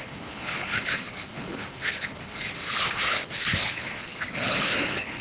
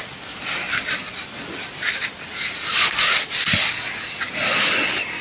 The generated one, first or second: first